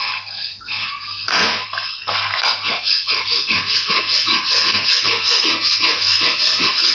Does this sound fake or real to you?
fake